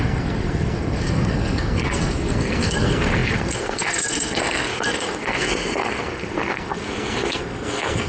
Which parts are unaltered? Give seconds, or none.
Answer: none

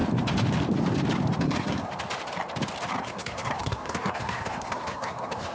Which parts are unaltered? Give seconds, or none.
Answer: 0.0-1.4; 1.9-3.0